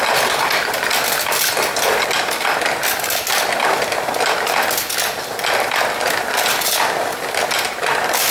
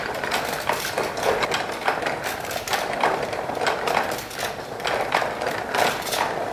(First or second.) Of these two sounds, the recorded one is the first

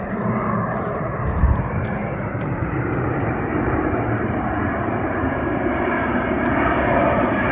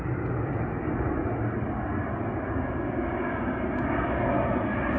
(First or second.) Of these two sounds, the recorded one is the second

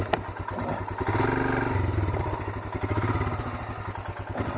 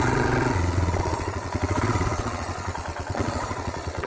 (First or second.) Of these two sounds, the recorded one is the first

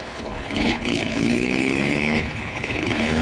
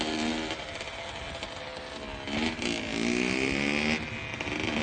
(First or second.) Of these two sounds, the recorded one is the second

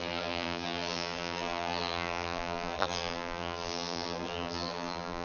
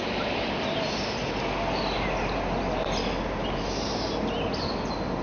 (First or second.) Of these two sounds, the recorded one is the second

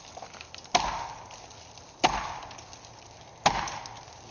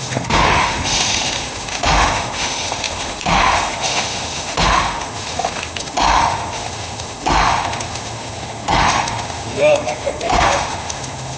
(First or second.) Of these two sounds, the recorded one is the first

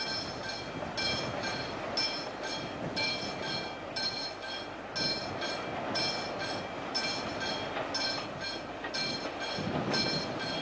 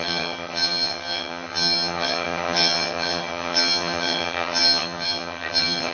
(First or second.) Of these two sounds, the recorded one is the first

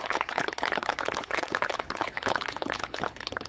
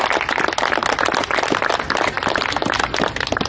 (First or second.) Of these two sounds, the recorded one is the second